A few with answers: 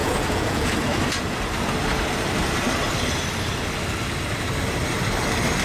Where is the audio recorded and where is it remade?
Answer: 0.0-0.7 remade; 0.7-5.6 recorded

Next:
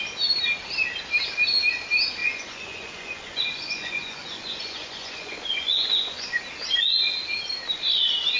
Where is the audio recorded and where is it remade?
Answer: 0.0-2.2 recorded; 2.2-6.4 remade; 6.4-8.4 recorded

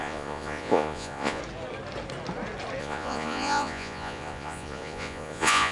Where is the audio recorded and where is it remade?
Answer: 0.0-1.4 remade; 1.4-2.8 recorded; 2.8-5.7 remade

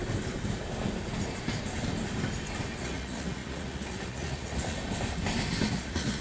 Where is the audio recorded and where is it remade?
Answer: 0.0-2.8 recorded; 2.8-4.8 remade; 4.8-5.7 recorded; 5.7-6.2 remade

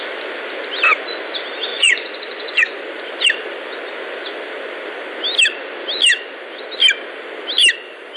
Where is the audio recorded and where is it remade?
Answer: 0.0-1.7 recorded; 1.7-2.9 remade; 2.9-8.2 recorded

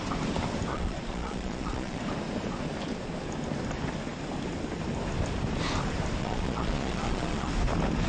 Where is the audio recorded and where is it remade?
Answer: 0.0-0.7 recorded; 0.7-2.0 remade; 2.0-6.2 recorded; 6.2-7.5 remade; 7.5-8.1 recorded

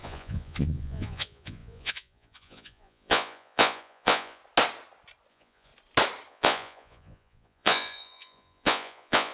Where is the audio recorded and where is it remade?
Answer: 0.0-4.4 remade; 4.4-5.3 recorded; 5.3-5.7 remade; 5.7-6.3 recorded; 6.3-9.3 remade